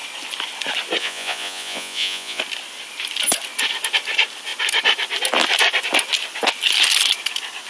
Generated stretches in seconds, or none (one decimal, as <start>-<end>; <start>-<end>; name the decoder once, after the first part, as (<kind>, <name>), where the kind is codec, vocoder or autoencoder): 1.0-2.4 (vocoder, Vocos)